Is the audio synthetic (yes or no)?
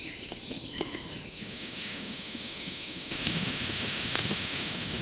yes